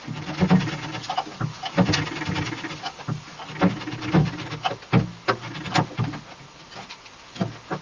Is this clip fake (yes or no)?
no